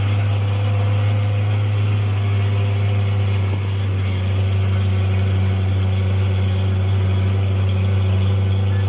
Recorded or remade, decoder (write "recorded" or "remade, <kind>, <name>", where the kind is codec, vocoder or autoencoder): recorded